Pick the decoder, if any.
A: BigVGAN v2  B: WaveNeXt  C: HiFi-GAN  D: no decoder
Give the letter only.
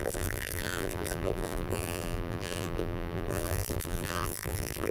A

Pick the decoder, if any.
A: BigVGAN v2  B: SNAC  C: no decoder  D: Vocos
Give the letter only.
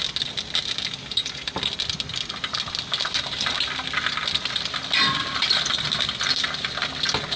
A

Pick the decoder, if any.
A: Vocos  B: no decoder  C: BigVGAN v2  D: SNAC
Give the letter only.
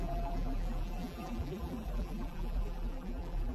C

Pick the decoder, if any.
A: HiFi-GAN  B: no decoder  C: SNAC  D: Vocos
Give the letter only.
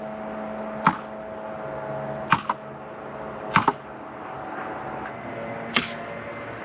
B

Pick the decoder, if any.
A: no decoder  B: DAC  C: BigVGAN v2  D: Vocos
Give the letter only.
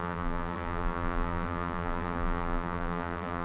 C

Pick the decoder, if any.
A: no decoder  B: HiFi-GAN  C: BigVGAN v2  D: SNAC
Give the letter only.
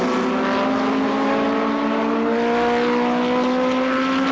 A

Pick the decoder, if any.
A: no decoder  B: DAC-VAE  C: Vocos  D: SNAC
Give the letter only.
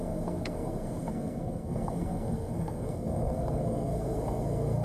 D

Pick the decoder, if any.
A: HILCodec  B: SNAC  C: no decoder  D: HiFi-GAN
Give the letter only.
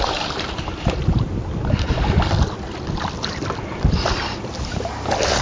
C